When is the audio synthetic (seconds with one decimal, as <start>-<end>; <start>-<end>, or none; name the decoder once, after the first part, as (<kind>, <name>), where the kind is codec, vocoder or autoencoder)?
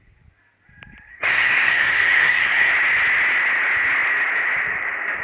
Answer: 1.1-2.7 (codec, SNAC)